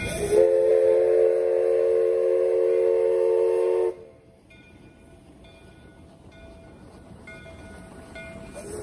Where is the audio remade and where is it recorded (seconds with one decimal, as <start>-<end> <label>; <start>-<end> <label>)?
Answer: 0.0-8.8 recorded